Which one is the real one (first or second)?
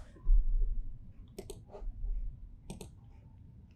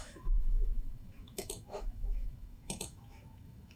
first